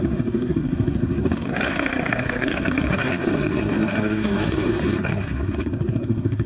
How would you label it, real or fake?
fake